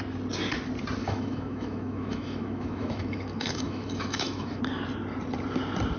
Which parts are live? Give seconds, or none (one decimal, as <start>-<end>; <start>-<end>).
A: 0.0-1.0; 4.6-6.0